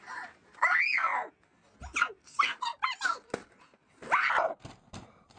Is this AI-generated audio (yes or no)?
no